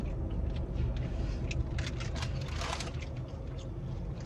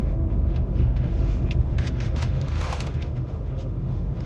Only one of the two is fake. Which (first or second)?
second